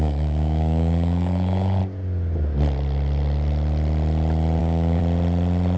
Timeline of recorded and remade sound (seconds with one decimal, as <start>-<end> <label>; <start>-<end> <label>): 0.0-1.8 remade; 1.8-4.6 recorded; 4.6-5.0 remade; 5.0-5.8 recorded